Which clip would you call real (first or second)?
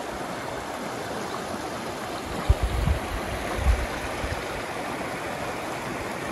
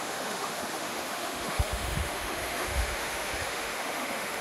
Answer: first